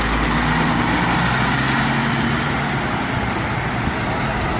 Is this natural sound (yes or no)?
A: yes